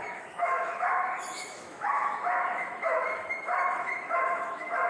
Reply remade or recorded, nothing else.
remade